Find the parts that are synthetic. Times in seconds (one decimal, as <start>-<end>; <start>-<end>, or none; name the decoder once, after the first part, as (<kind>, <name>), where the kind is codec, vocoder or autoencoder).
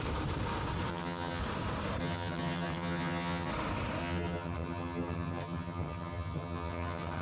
0.9-1.4 (vocoder, HiFi-GAN); 2.0-3.5; 4.0-7.2